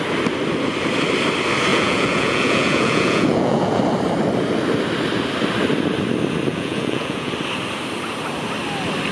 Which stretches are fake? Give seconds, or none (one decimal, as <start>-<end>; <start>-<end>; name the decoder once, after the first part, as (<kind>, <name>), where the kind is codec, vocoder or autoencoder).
1.7-3.8 (vocoder, Vocos); 6.5-7.3